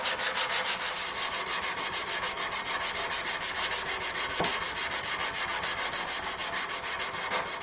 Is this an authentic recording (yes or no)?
yes